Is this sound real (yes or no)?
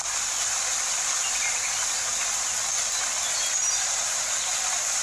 yes